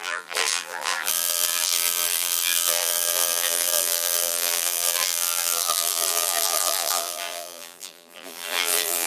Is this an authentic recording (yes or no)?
no